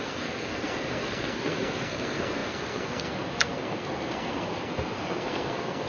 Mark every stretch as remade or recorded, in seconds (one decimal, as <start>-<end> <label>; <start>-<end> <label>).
0.0-5.9 remade

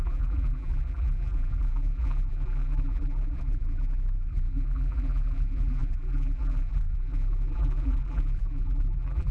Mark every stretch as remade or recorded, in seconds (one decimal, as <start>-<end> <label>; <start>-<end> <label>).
0.0-9.3 remade

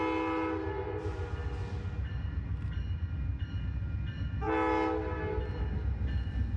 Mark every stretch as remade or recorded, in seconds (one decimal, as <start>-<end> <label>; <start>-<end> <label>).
0.0-6.6 recorded

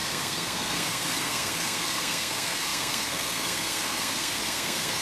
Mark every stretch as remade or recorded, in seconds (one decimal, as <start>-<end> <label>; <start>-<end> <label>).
0.0-5.0 remade